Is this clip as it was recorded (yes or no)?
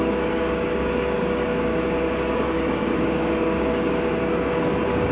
no